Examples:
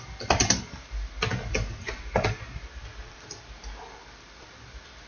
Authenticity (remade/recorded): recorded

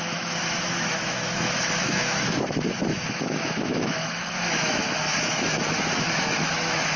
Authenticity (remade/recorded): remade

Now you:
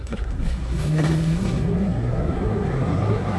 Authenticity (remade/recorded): remade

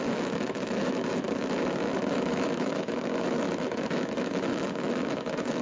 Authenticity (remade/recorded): remade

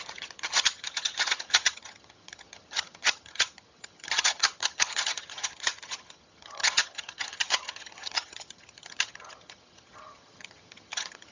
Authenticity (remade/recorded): remade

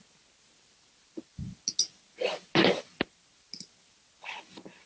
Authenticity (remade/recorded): recorded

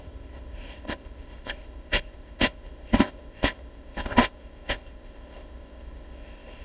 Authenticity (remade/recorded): remade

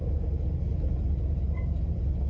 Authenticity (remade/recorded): recorded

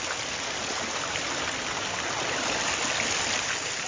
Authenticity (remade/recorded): recorded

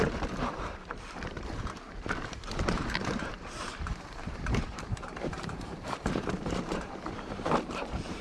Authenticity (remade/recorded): remade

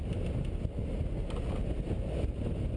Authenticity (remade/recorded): recorded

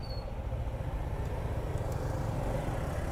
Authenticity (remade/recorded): recorded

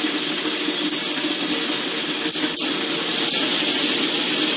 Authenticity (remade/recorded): recorded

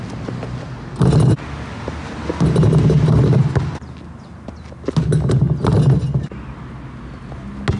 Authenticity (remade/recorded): recorded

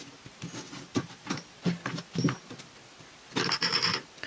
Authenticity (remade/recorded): recorded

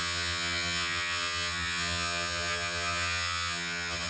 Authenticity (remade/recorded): remade